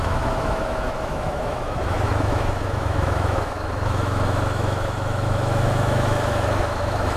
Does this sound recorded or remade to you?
remade